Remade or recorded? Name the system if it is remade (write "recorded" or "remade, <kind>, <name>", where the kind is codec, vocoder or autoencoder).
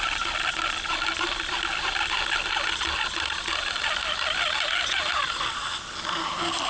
recorded